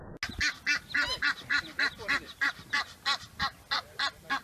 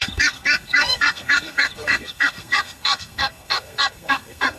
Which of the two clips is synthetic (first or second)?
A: second